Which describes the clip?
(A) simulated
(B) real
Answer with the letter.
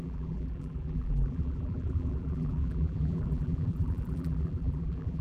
A